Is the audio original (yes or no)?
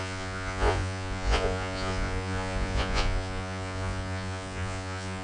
no